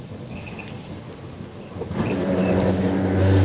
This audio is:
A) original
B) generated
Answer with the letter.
A